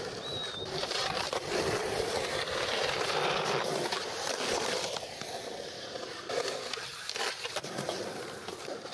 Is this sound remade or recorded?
remade